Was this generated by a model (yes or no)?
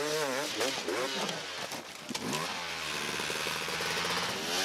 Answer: no